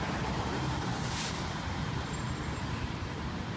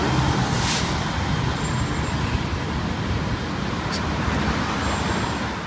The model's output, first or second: first